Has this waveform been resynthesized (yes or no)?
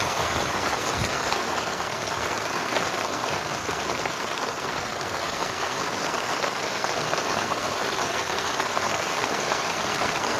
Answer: yes